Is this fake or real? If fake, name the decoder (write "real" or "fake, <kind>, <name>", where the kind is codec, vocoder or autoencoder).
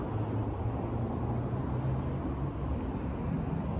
real